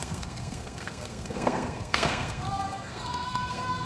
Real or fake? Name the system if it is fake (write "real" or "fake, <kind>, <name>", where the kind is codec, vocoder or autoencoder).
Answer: fake, codec, SNAC